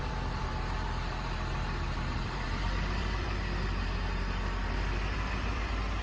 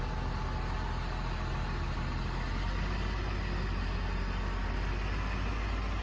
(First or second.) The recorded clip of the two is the second